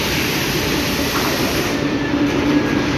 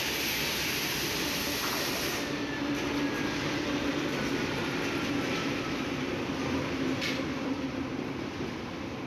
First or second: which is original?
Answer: second